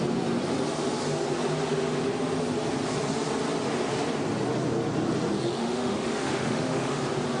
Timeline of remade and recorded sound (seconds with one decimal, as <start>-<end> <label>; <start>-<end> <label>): 0.0-5.6 recorded; 5.6-7.0 remade; 7.0-7.4 recorded